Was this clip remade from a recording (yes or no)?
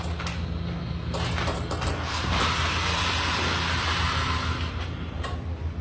no